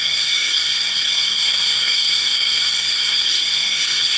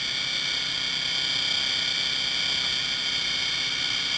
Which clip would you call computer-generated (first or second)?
first